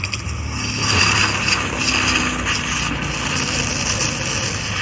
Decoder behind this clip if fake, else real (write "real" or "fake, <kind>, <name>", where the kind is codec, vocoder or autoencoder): real